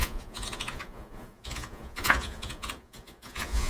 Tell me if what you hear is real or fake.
fake